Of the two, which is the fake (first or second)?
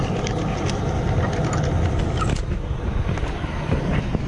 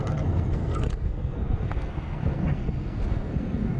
second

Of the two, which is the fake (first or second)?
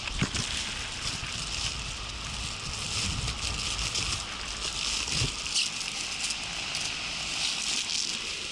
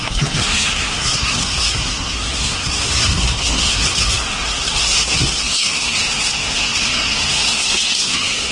second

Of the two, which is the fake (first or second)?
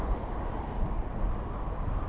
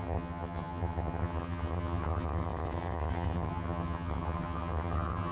second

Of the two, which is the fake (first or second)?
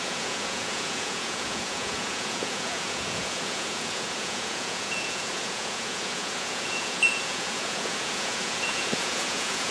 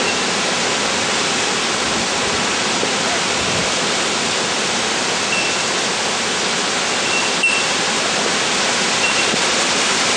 first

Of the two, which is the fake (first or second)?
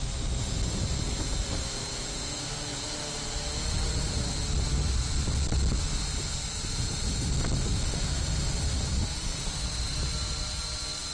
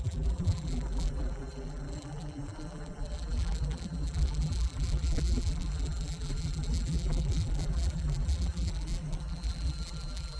second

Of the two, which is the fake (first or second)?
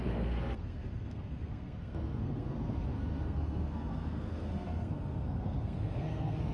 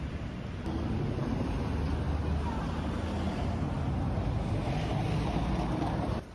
first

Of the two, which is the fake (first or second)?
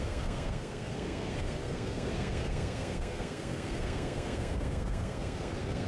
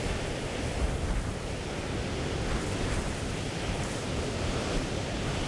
first